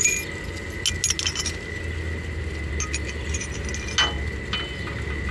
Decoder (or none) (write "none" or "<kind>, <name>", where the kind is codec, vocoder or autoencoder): none